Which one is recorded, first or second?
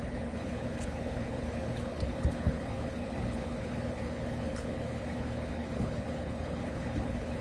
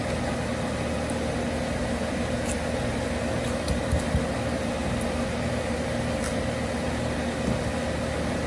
second